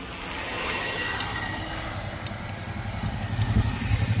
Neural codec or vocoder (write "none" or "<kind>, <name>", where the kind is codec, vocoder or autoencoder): none